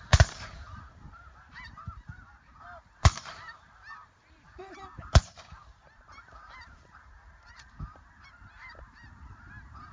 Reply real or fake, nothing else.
fake